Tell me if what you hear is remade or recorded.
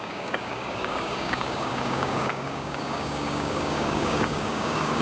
remade